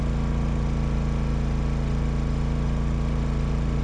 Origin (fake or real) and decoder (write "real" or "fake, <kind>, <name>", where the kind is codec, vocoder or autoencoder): real